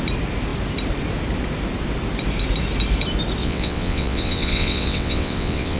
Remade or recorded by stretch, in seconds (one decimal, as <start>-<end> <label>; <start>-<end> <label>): 0.0-3.4 recorded; 3.4-5.8 remade